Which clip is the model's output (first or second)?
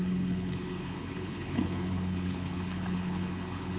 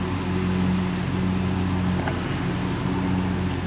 first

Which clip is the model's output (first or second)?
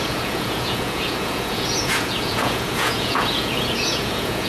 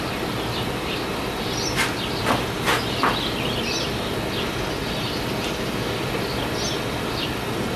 first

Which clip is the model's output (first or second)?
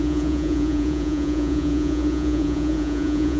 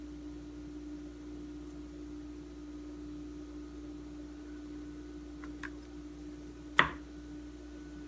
first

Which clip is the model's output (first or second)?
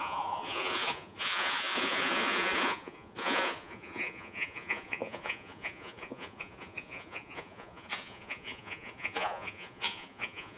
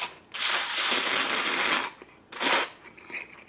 first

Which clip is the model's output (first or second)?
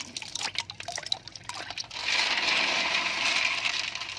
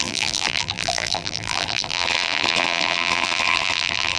second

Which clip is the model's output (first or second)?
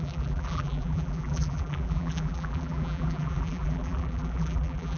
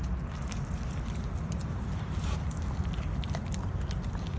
first